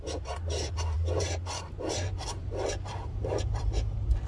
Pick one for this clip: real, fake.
fake